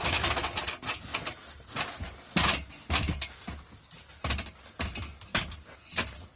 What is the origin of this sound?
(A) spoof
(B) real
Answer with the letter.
B